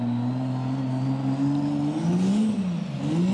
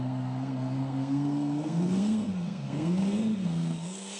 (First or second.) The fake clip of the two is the second